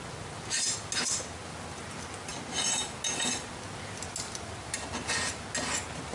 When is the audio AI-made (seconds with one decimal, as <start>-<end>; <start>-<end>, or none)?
none